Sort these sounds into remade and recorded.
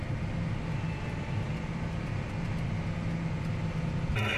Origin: recorded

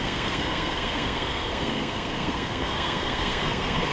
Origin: remade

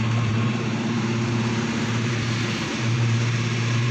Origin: remade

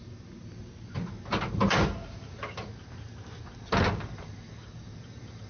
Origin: recorded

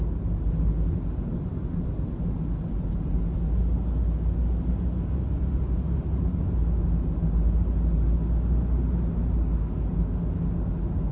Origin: recorded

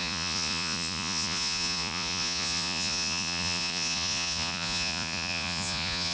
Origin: remade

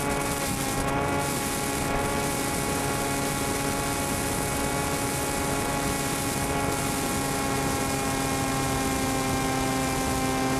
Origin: recorded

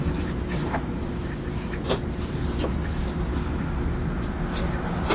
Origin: recorded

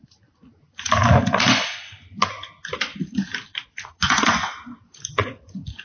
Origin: recorded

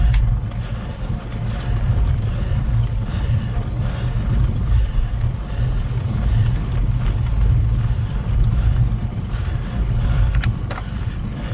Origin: recorded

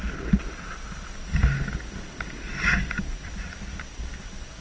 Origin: recorded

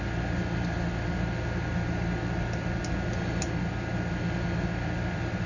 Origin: recorded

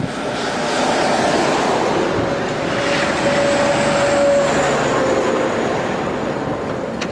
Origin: recorded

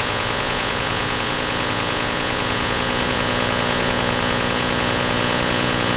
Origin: remade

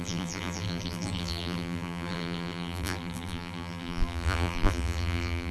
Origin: remade